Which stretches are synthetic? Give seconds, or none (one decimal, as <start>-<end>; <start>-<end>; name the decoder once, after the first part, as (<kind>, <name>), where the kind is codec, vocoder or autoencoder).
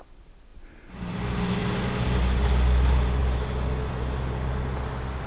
none